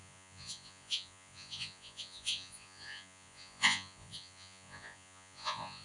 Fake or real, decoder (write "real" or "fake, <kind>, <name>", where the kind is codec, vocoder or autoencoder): fake, vocoder, Vocos